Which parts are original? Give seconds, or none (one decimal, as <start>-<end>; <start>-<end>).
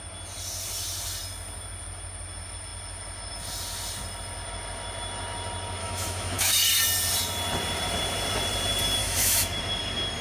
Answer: 0.0-5.8; 6.5-9.0; 9.6-10.2